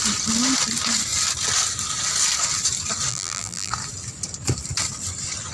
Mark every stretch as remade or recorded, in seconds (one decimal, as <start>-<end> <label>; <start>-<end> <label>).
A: 0.0-3.1 recorded; 3.1-3.7 remade; 3.7-5.5 recorded